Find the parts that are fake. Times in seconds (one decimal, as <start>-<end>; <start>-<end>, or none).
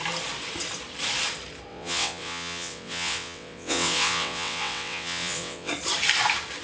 1.7-5.7